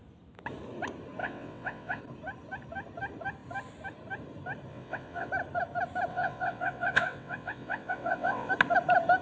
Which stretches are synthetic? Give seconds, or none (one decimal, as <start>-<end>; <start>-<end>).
1.2-2.0; 4.7-5.3; 6.1-8.5